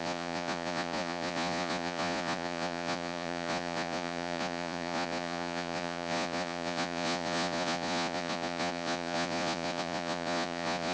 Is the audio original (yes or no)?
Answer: no